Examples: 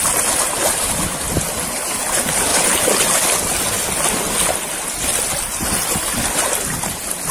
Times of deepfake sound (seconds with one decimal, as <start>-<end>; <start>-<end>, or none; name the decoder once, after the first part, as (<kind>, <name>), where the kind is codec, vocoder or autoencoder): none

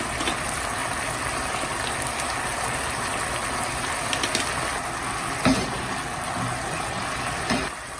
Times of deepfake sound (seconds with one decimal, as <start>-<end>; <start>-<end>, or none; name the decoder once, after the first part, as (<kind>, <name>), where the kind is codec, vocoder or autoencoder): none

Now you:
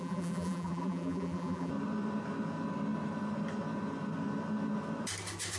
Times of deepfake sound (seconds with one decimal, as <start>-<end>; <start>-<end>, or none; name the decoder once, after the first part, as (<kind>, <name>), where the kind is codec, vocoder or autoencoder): 0.0-1.7 (vocoder, BigVGAN v2)

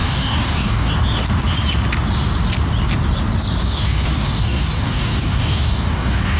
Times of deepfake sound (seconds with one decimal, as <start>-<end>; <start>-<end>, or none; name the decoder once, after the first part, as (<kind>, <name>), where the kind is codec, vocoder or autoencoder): 0.0-0.9 (codec, DAC); 3.6-6.4

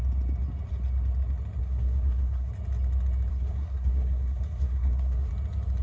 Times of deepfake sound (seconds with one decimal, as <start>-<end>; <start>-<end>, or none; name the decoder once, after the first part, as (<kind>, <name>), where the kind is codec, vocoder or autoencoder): 1.6-2.5 (codec, SNAC); 3.3-5.3

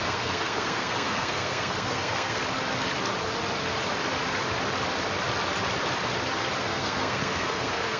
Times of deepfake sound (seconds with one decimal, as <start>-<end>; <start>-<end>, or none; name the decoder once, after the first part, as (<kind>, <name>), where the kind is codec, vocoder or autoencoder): 0.0-2.4 (codec, SNAC); 6.6-8.0

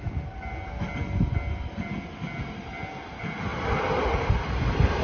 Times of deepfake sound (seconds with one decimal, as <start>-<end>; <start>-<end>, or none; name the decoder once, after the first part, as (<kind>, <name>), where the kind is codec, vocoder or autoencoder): none

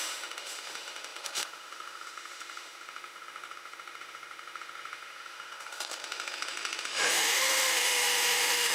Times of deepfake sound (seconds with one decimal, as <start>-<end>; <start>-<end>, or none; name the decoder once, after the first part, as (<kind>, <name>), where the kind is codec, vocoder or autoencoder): 0.0-8.7 (autoencoder, DAC-VAE)